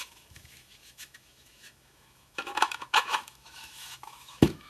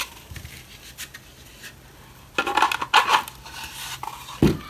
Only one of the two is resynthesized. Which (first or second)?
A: first